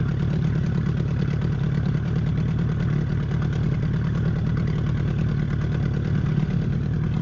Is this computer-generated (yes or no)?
no